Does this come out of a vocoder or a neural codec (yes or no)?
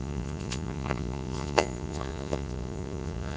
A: yes